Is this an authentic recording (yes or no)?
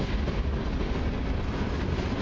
yes